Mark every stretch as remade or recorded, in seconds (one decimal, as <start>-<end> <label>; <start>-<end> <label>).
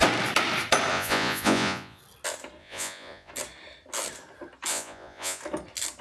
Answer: 0.0-0.9 recorded; 0.9-2.0 remade; 2.0-2.6 recorded; 2.6-3.3 remade; 3.3-4.7 recorded; 4.7-5.4 remade; 5.4-6.0 recorded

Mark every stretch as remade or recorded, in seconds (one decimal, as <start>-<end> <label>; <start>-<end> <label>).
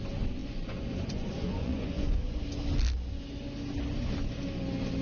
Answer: 0.0-0.4 recorded; 0.4-2.4 remade; 2.4-5.0 recorded